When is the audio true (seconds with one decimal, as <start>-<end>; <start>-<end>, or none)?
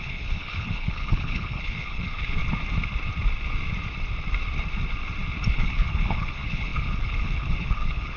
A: 2.4-5.5